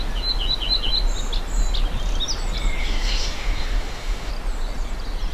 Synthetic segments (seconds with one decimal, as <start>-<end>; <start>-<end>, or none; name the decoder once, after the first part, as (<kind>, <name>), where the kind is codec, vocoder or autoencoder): 2.8-4.3 (autoencoder, DAC-VAE)